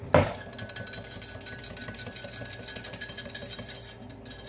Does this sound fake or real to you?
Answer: real